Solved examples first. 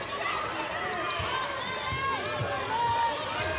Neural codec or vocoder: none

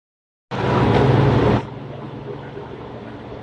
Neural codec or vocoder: none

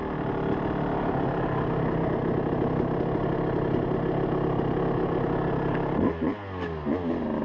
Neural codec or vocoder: none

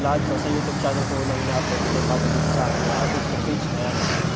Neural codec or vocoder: none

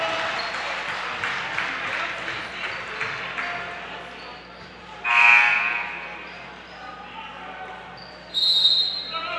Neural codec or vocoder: none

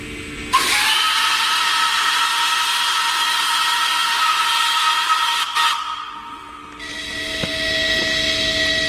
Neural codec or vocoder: none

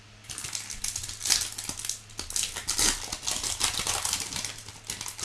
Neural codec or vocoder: none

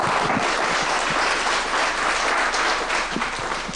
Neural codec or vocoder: none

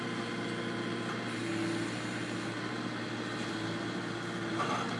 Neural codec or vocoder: none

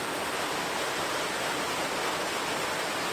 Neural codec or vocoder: none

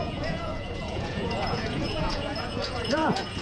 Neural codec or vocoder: vocoder, Vocos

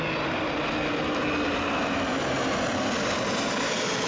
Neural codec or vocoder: none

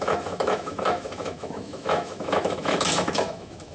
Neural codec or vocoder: autoencoder, DAC-VAE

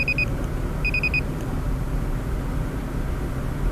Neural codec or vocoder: none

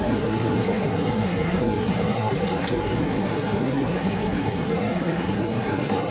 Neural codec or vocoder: codec, SNAC